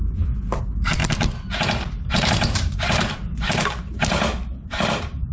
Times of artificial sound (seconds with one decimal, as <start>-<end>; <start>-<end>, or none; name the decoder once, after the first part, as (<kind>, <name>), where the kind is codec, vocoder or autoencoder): 0.6-1.0 (vocoder, BigVGAN v2); 2.1-5.3